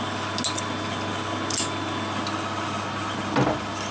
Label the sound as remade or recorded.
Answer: recorded